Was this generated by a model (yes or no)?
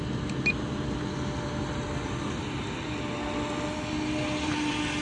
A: no